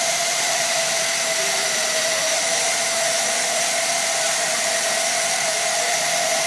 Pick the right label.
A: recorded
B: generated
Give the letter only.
B